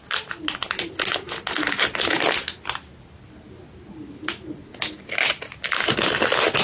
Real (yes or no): yes